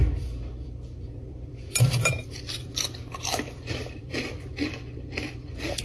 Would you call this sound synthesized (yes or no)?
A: yes